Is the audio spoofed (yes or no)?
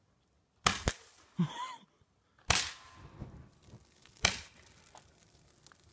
no